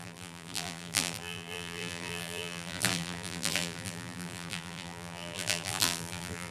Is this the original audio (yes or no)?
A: no